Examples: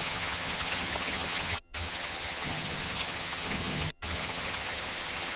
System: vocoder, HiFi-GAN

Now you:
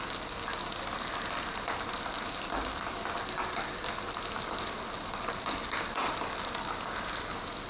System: none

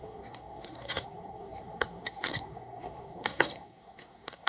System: codec, SNAC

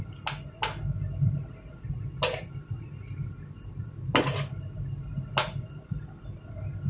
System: none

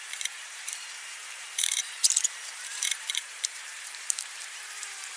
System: vocoder, BigVGAN v2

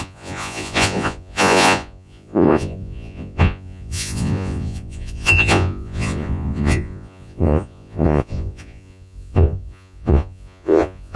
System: vocoder, Vocos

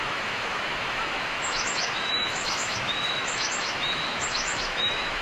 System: autoencoder, DAC-VAE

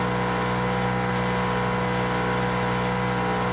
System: none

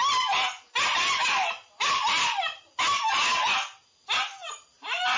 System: none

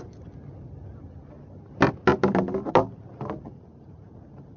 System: none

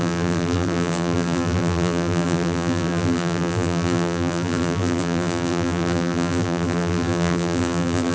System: vocoder, BigVGAN v2